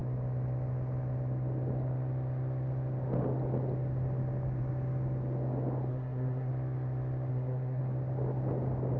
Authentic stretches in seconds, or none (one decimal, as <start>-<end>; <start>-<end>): 0.0-5.9; 6.5-7.3; 7.8-9.0